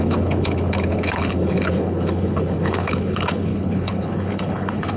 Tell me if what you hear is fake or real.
fake